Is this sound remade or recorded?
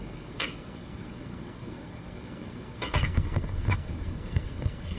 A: remade